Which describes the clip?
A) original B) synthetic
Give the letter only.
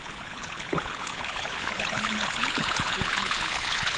B